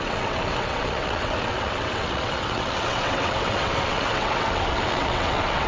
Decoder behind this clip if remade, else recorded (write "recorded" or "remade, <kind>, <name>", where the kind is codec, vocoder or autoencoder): remade, vocoder, WaveNeXt